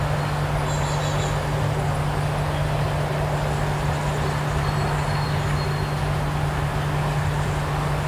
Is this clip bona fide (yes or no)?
yes